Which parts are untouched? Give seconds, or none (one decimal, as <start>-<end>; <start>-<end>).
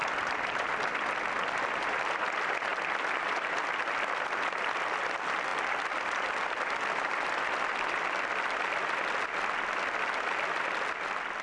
0.0-2.7; 3.6-5.5; 8.6-11.4